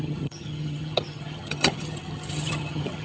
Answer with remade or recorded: remade